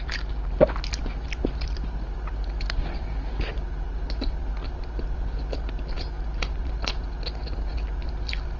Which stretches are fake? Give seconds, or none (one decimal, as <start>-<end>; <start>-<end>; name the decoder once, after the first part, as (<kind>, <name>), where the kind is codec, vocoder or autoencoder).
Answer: none